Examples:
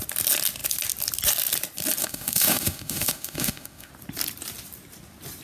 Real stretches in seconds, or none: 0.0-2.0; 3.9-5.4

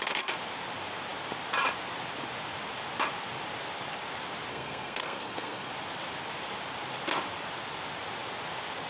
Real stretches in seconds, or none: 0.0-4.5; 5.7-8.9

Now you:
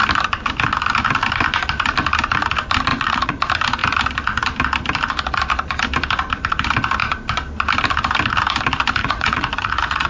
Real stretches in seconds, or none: 0.0-2.9; 3.4-9.0

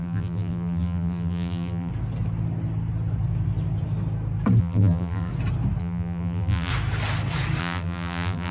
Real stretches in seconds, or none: 1.9-4.6; 5.3-5.8; 6.7-7.6

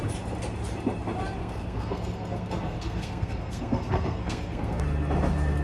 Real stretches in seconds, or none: 0.0-1.4; 4.8-5.6

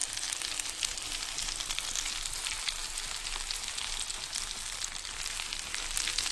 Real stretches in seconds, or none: 0.0-6.3